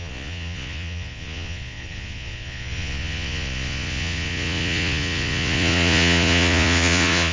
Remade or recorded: remade